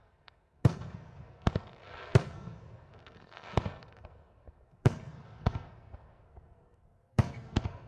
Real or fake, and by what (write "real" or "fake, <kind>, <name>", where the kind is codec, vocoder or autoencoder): fake, codec, SNAC